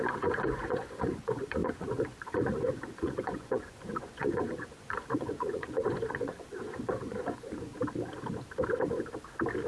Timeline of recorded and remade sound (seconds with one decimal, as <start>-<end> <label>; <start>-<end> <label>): 0.0-7.7 remade; 7.7-9.7 recorded